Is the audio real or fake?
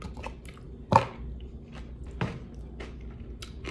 real